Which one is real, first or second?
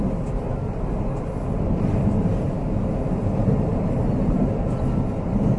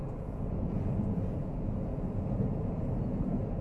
first